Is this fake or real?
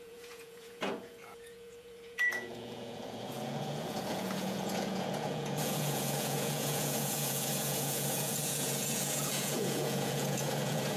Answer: fake